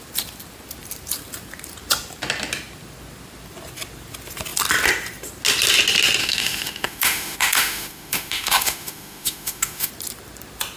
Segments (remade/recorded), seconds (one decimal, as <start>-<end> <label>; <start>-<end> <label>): 0.0-6.2 recorded; 6.2-9.9 remade; 9.9-10.8 recorded